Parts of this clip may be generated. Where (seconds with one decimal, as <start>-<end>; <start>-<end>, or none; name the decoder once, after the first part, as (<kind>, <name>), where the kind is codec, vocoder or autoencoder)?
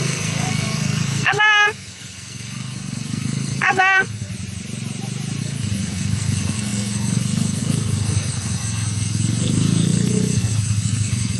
0.0-4.3 (codec, SNAC); 5.4-11.4